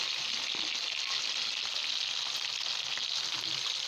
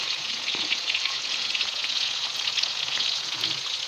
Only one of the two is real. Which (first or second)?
first